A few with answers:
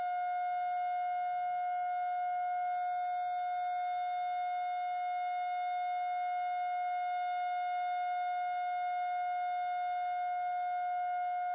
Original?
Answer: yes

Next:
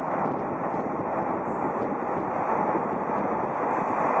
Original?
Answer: yes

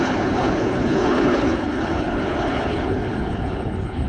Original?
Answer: no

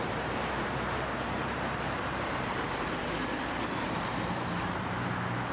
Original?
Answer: no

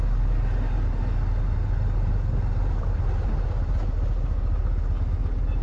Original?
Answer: yes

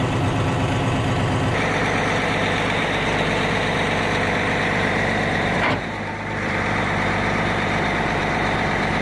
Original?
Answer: no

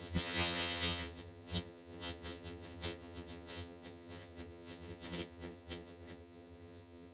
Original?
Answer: no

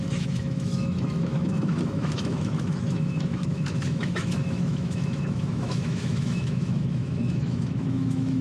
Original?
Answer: no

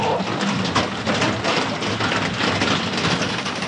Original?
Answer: yes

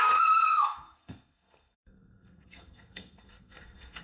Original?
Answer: no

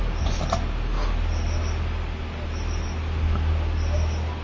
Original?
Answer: yes